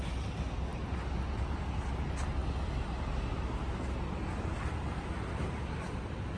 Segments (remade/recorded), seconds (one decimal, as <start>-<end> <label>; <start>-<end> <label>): 0.0-6.4 recorded